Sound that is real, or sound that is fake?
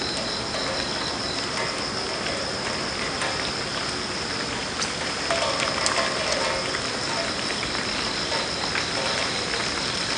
real